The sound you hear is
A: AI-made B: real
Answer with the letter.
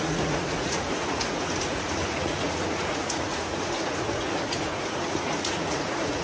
A